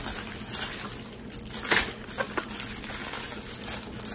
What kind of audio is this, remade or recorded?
recorded